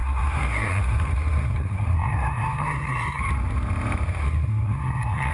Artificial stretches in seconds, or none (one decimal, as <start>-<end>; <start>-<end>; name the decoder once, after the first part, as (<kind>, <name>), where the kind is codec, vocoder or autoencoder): 0.0-3.2 (codec, SNAC); 4.2-5.3